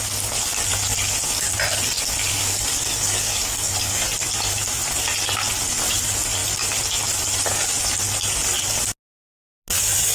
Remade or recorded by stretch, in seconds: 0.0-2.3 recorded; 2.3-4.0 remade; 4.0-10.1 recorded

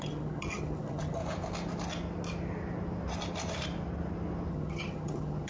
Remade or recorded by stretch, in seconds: 0.0-1.2 remade; 1.2-4.5 recorded; 4.5-5.5 remade

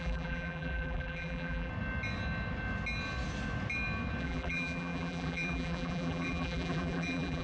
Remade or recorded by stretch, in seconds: 0.0-1.7 remade; 1.7-4.2 recorded; 4.2-7.4 remade

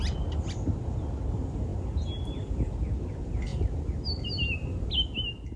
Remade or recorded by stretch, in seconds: 0.0-5.6 recorded

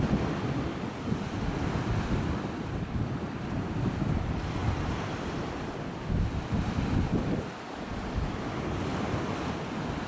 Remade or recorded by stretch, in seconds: 0.0-10.1 remade